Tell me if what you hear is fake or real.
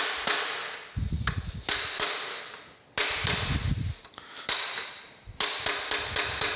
real